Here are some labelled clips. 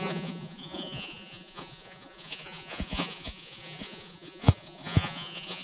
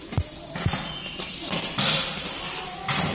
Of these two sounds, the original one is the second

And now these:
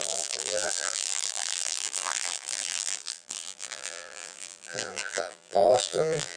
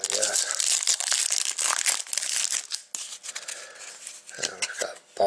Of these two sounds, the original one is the second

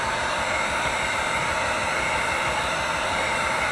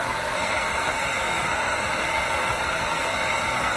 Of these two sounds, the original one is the first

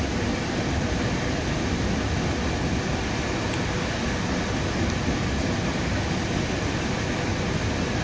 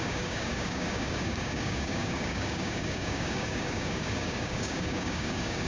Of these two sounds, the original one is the first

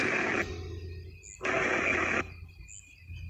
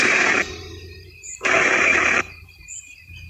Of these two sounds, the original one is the first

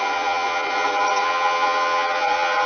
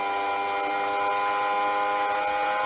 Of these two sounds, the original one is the second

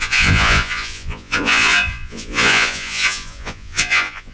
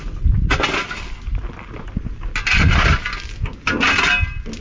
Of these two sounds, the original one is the second